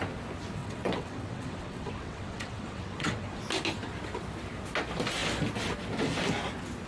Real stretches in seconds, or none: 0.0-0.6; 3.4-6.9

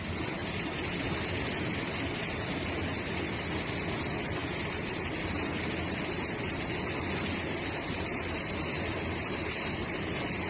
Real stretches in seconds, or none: 0.0-10.5

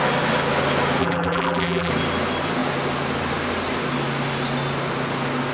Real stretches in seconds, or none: 0.0-1.0; 1.9-5.5

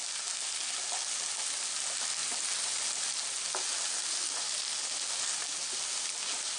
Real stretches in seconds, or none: 0.0-6.6

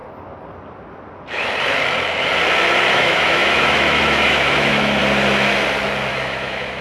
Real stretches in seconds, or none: 0.0-2.9; 5.0-6.1

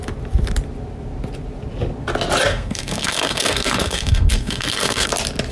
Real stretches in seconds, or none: 0.0-2.5; 5.1-5.5

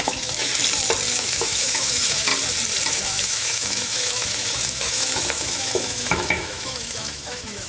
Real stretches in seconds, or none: 0.5-1.1; 2.3-2.9

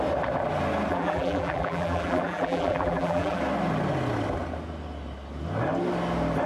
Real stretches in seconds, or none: 0.0-0.9; 3.4-6.5